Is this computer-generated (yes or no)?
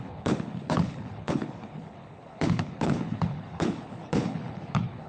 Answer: yes